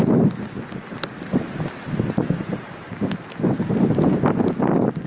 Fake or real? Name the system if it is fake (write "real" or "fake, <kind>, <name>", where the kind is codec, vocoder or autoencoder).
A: real